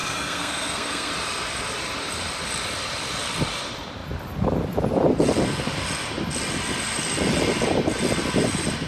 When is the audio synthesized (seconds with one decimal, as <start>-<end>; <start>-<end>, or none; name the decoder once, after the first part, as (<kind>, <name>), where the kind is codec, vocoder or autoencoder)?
0.0-1.1 (codec, SNAC)